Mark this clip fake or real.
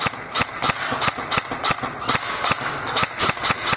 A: real